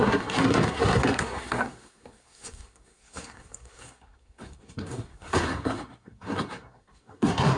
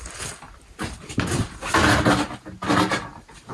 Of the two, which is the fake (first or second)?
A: first